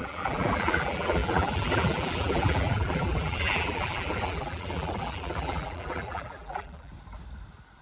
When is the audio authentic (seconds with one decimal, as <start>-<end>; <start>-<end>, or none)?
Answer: 6.9-7.8